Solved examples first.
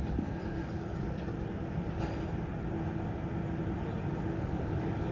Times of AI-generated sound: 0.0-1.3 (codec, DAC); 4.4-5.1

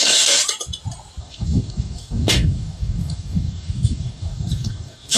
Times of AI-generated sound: 0.0-0.4 (codec, DAC); 1.2-5.2

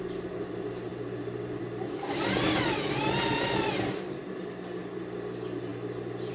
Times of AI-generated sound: none

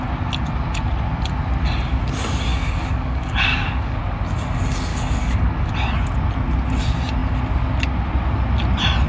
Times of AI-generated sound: 2.5-4.0 (codec, DAC); 4.9-5.7

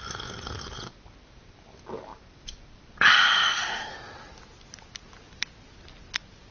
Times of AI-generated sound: none

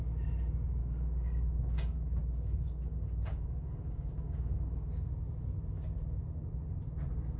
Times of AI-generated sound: 0.8-5.1 (codec, DAC)

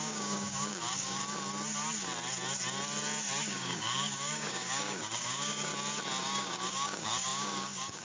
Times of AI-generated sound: 0.0-1.2 (codec, DAC); 3.4-5.7; 6.2-8.0

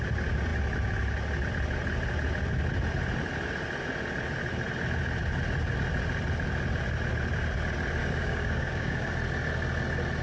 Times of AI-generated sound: 8.0-9.1 (codec, DAC)